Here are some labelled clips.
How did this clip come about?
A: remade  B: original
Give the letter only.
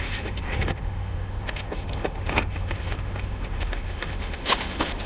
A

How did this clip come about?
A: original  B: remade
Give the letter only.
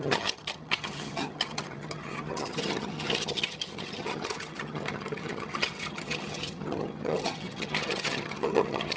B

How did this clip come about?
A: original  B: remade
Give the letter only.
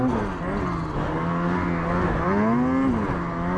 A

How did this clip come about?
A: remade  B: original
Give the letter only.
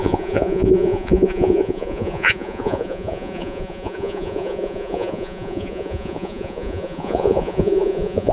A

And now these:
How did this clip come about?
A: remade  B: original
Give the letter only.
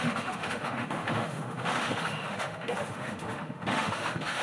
A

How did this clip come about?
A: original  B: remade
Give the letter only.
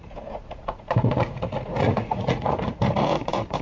B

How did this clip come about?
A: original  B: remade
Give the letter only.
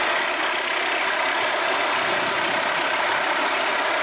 A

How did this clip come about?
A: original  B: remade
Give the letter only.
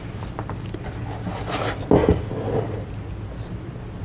A